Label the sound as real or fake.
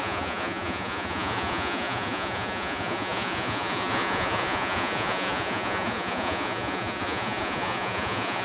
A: fake